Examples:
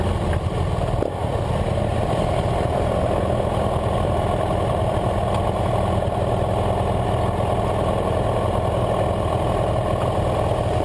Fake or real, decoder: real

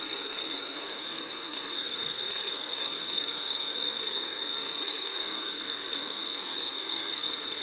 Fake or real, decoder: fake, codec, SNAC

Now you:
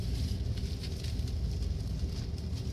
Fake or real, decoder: real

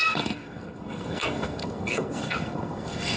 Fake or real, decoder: fake, codec, SNAC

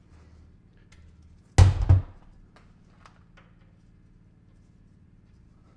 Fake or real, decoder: real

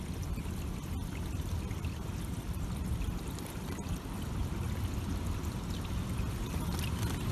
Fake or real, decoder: real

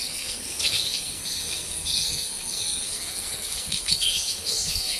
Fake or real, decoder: fake, codec, SNAC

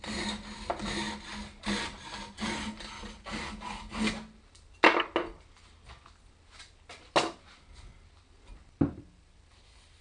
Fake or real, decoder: real